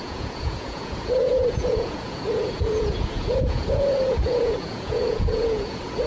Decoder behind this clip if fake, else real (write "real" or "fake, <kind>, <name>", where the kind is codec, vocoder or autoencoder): fake, vocoder, Vocos